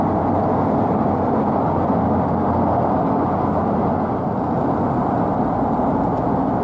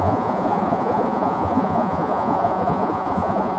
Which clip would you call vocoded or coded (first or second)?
second